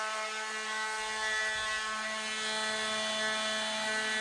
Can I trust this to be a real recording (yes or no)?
yes